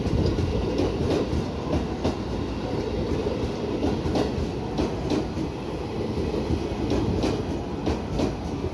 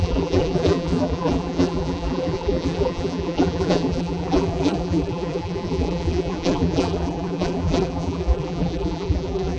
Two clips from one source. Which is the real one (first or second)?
first